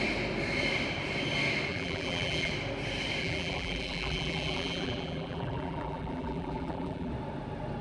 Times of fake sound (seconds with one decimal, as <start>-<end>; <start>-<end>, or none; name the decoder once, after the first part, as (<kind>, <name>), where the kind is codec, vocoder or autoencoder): 1.7-2.5 (vocoder, BigVGAN v2); 3.2-7.1